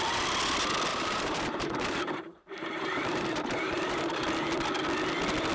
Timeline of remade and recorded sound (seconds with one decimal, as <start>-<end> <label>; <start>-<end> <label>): 0.0-0.9 recorded; 0.9-4.1 remade; 4.1-5.5 recorded